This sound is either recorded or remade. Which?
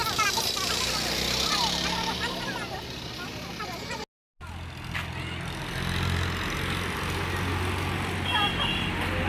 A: recorded